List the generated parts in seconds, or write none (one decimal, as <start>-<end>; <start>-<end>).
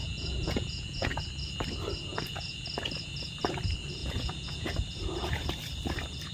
0.0-1.3; 2.1-2.6; 4.0-4.7